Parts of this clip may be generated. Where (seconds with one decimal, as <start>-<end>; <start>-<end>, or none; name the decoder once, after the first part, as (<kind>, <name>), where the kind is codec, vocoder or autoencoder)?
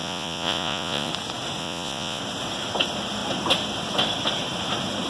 0.0-1.1 (vocoder, Vocos); 1.6-2.2